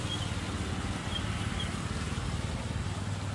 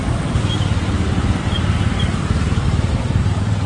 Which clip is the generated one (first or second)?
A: second